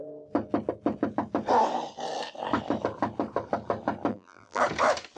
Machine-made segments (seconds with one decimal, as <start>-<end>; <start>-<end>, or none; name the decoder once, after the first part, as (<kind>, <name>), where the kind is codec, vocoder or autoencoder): 4.1-4.6 (vocoder, BigVGAN v2)